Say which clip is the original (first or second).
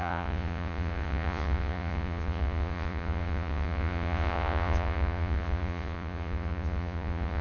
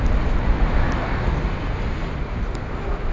second